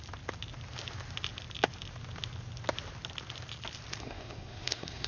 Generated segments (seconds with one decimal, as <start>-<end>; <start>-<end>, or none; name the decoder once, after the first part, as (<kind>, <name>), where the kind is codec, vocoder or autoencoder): 4.0-5.1 (codec, SNAC)